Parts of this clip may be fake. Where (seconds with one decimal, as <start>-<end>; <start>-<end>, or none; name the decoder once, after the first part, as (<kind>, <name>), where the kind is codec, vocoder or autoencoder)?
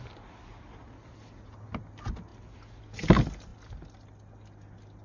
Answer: none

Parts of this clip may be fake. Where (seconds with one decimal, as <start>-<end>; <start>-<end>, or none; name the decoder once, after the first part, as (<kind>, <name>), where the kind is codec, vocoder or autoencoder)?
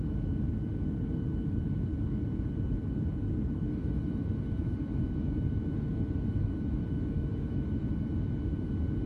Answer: 0.0-1.9 (autoencoder, DAC-VAE); 3.3-7.8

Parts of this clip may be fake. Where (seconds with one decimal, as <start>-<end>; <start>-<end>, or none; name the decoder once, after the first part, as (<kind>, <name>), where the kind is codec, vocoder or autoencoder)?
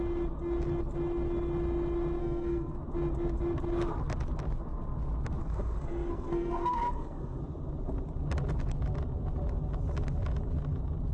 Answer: 2.2-2.8 (codec, SNAC); 5.4-7.4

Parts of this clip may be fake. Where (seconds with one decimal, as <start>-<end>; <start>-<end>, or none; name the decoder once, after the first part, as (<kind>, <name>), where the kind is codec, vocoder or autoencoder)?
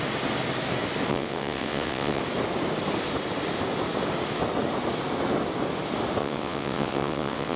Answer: 1.1-2.2 (vocoder, WaveNeXt); 6.2-7.6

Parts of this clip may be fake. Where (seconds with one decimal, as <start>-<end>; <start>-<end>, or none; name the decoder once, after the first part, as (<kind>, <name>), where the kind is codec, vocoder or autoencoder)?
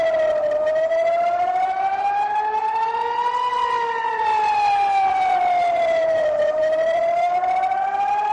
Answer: 0.9-2.6 (vocoder, BigVGAN v2); 4.0-7.3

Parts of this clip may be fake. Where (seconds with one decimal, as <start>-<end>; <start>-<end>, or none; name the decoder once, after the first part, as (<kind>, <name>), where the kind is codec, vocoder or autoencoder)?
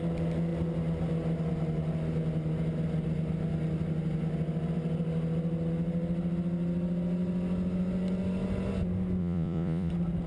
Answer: 9.2-9.9 (vocoder, Vocos)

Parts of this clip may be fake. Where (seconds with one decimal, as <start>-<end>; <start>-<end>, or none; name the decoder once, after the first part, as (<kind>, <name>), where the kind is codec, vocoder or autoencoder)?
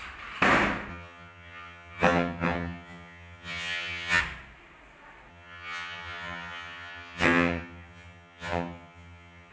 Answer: 0.9-4.2 (vocoder, HiFi-GAN); 5.3-9.5